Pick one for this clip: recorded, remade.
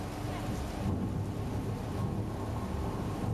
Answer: recorded